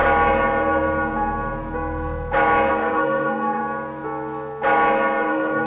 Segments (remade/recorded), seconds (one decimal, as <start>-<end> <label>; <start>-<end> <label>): 0.0-2.7 recorded; 2.7-3.6 remade; 3.6-5.3 recorded; 5.3-5.7 remade

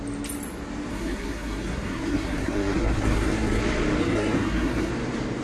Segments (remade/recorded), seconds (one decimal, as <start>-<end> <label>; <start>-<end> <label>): 0.0-0.9 recorded; 0.9-3.6 remade; 3.6-4.0 recorded; 4.0-4.9 remade; 4.9-5.4 recorded

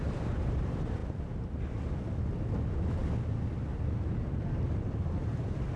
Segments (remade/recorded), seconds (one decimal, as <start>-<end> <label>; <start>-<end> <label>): 0.0-5.8 recorded

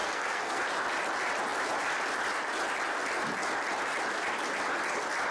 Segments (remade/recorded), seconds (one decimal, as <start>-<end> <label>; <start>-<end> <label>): 0.0-0.6 remade; 0.6-5.3 recorded

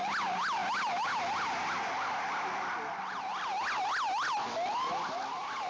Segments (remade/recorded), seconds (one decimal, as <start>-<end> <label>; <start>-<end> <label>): 0.0-5.7 recorded

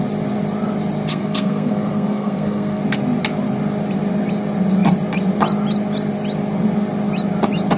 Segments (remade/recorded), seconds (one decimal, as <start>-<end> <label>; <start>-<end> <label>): 0.0-1.1 recorded; 1.1-2.8 remade; 2.8-7.8 recorded

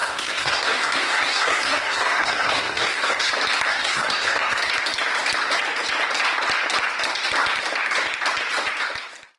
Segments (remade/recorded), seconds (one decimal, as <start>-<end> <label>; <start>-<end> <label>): 0.0-3.3 remade; 3.3-3.7 recorded; 3.7-4.7 remade; 4.7-9.4 recorded

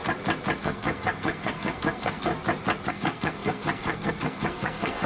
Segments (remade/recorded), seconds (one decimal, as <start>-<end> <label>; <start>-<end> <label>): 0.0-0.6 recorded; 0.6-2.3 remade; 2.3-2.9 recorded; 2.9-5.1 remade